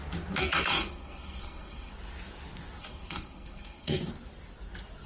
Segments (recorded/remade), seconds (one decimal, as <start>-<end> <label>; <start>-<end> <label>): 0.0-0.4 recorded; 0.4-1.9 remade; 1.9-2.8 recorded; 2.8-4.0 remade; 4.0-5.1 recorded